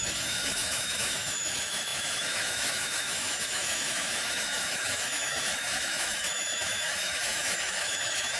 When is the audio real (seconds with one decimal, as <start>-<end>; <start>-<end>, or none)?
none